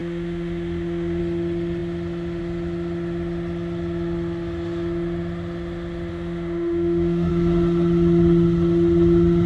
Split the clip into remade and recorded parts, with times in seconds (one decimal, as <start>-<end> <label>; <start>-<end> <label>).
0.0-1.2 remade; 1.2-6.1 recorded; 6.1-7.3 remade; 7.3-9.5 recorded